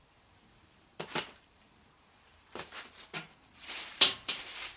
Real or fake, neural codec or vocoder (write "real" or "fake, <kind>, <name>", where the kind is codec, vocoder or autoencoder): fake, vocoder, BigVGAN v2